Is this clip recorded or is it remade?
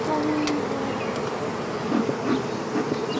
recorded